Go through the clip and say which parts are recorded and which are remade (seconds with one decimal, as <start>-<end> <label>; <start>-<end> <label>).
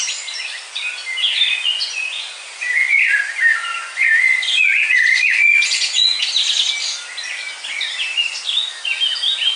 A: 0.0-1.2 recorded; 1.2-6.2 remade; 6.2-9.6 recorded